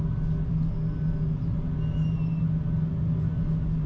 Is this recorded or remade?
recorded